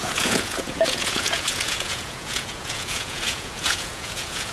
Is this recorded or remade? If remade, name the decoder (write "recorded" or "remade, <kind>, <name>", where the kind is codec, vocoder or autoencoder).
remade, vocoder, Vocos